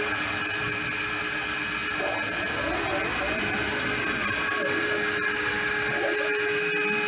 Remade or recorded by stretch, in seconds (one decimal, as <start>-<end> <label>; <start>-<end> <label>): 0.0-7.1 recorded